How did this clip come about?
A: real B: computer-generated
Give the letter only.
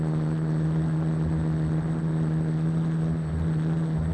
A